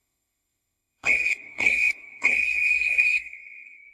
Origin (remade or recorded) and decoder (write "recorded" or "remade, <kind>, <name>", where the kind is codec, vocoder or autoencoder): remade, codec, SNAC